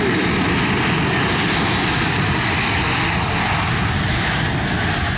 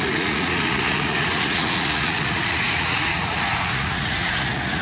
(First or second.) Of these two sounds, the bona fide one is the first